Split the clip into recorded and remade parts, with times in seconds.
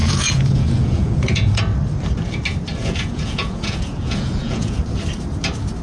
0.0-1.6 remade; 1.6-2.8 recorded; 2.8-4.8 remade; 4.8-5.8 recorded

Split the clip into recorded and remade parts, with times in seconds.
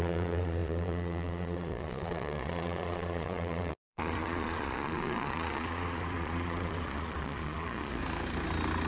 0.0-8.0 remade; 8.0-8.9 recorded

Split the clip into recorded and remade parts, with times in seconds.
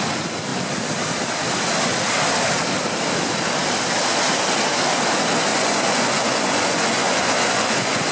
0.0-5.5 recorded; 5.5-8.1 remade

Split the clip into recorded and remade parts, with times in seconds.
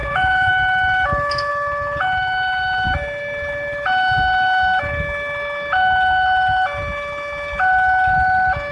0.0-0.5 remade; 0.5-8.7 recorded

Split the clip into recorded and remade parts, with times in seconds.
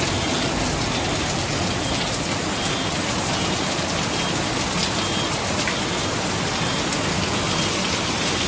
0.0-8.5 recorded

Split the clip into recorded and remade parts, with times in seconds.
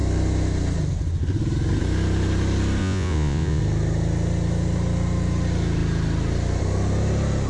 0.0-2.8 recorded; 2.8-3.6 remade; 3.6-7.5 recorded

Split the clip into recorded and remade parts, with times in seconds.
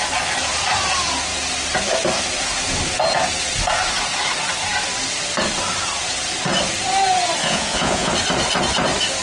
0.0-7.4 recorded; 7.4-8.1 remade; 8.1-9.2 recorded